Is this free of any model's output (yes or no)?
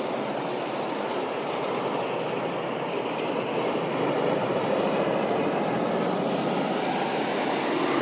yes